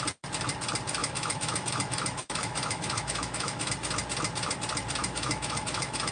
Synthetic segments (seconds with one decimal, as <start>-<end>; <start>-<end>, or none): 1.0-3.7; 5.0-6.1